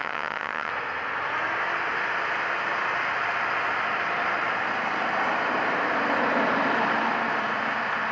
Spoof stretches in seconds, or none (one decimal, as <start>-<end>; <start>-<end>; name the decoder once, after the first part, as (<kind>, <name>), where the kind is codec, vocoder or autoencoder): 0.0-0.7 (vocoder, HiFi-GAN)